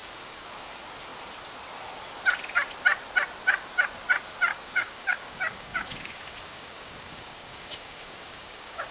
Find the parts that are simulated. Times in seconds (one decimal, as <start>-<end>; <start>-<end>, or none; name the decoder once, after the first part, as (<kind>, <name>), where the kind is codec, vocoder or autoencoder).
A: 0.0-0.5 (codec, DAC); 4.5-8.9